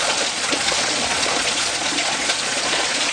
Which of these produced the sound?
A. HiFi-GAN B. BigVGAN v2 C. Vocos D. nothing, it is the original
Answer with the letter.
C